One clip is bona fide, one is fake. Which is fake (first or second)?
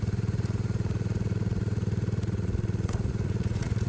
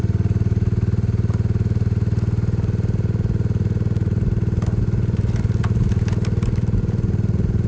first